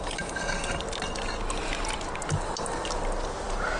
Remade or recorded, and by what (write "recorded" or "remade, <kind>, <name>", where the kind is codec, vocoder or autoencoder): recorded